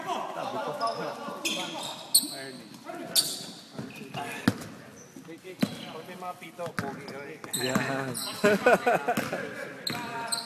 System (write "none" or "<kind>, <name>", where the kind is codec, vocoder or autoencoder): none